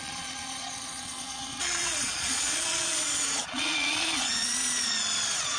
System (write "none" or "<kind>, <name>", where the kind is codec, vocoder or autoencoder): vocoder, Vocos